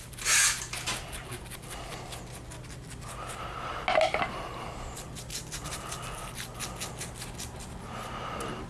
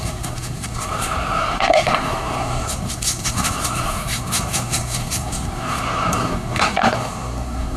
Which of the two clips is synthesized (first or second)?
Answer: second